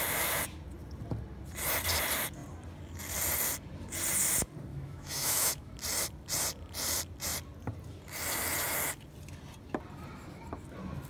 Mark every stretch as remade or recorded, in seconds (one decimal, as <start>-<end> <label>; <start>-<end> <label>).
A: 0.0-4.7 recorded; 4.7-5.7 remade; 5.7-11.1 recorded